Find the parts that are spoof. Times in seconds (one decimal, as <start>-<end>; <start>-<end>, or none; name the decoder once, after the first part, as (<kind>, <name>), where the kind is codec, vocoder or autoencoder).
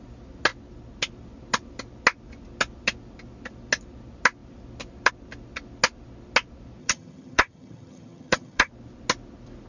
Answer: 6.8-8.7 (vocoder, HiFi-GAN)